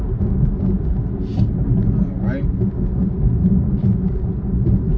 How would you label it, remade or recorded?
recorded